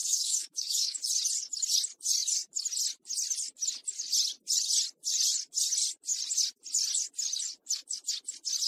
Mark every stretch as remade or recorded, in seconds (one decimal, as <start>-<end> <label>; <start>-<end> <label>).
0.0-1.0 remade; 1.0-8.7 recorded